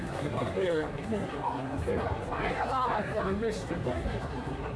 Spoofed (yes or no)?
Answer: yes